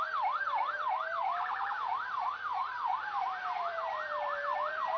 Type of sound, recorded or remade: remade